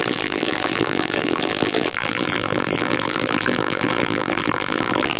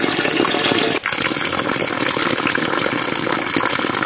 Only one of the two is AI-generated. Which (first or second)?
first